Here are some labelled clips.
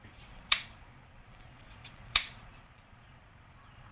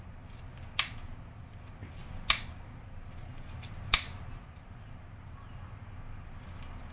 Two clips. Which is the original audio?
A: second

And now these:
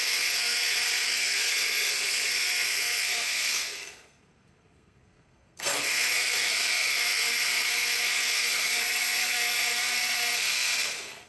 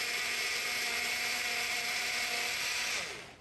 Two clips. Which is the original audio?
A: second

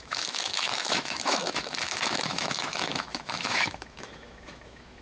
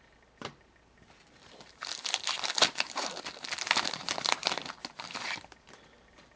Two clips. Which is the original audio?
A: second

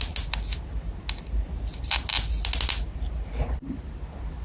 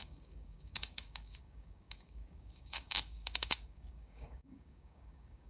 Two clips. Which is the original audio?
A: first